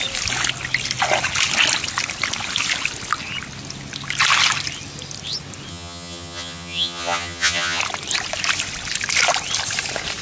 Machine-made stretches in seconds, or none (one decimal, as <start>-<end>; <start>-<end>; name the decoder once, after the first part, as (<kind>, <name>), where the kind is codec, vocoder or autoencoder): 5.7-7.8 (vocoder, HiFi-GAN)